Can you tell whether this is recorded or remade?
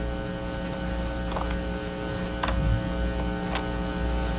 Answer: recorded